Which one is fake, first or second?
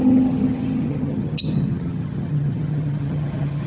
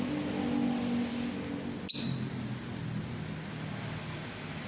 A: first